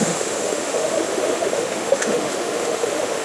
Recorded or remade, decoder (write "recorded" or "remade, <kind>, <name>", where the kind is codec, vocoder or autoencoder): remade, autoencoder, DAC-VAE